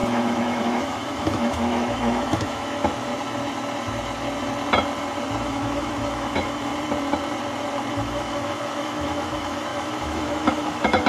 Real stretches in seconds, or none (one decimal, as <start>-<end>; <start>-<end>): 3.1-5.4; 6.7-7.9